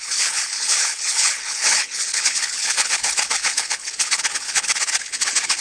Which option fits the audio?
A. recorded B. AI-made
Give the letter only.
B